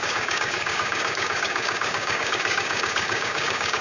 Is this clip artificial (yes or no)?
yes